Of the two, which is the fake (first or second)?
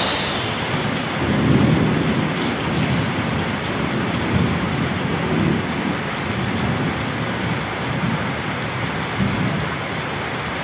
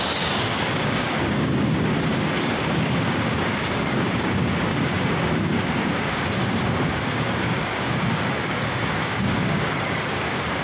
second